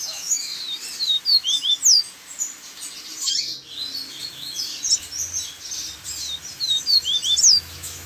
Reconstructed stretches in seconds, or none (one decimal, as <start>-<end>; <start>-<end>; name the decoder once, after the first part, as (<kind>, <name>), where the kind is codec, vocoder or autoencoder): 0.0-0.5 (autoencoder, DAC-VAE); 4.3-4.7; 7.4-8.1